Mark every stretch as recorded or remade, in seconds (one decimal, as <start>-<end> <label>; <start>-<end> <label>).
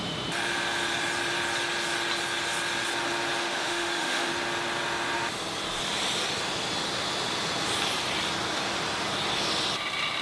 0.0-3.4 recorded; 3.4-4.3 remade; 4.3-10.2 recorded